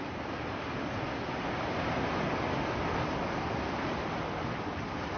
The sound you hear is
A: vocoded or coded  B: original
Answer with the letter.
B